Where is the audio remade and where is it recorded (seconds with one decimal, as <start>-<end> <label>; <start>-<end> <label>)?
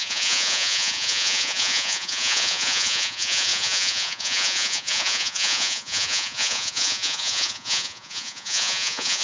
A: 0.0-9.2 remade